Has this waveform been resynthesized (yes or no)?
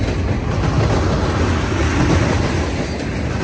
no